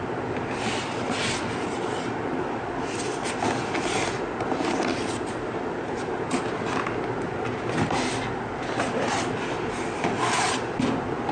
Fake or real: real